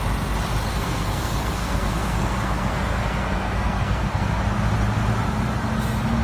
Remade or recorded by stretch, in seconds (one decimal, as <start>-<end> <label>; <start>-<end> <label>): 0.0-0.7 recorded; 0.7-4.4 remade; 4.4-6.2 recorded